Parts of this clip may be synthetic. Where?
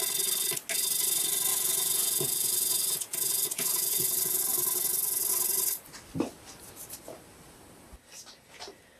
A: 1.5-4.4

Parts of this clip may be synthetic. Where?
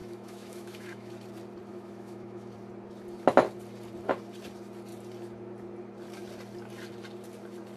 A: 0.0-1.1; 1.7-2.5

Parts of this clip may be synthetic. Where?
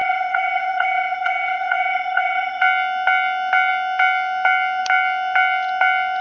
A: 0.0-2.6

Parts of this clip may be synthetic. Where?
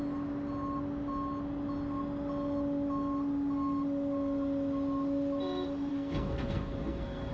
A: 5.9-7.3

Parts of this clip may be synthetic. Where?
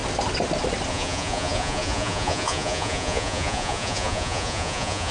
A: 0.9-5.1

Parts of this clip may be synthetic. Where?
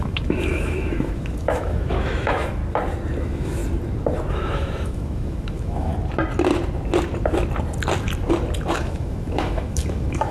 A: 0.0-2.6; 3.2-3.6; 4.3-5.9; 8.8-10.3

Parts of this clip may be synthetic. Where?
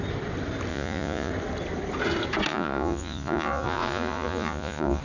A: 0.7-1.3; 2.5-5.0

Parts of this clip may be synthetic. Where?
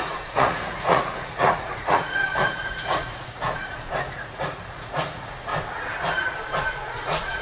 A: 0.0-5.5; 6.6-7.4